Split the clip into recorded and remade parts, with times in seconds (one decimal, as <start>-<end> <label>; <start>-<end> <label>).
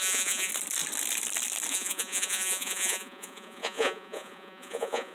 0.0-0.5 remade; 0.5-1.7 recorded; 1.7-5.1 remade